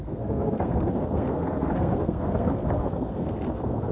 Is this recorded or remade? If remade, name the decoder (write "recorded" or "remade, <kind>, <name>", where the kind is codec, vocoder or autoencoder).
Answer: remade, codec, SNAC